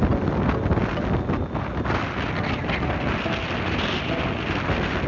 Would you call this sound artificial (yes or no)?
no